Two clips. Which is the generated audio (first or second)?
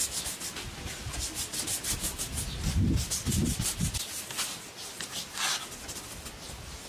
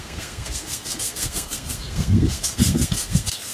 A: second